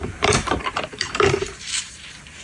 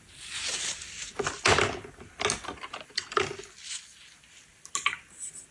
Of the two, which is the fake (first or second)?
first